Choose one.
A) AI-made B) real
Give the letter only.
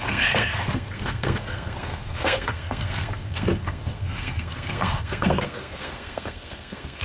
A